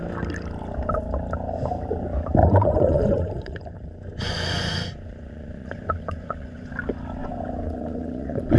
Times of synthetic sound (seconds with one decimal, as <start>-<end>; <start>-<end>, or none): 2.4-6.7; 7.2-8.6